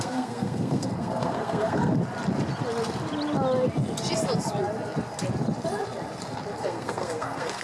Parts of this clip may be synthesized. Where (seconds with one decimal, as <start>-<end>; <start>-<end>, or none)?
0.0-2.0; 6.6-7.6